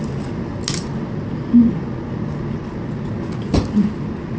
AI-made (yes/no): no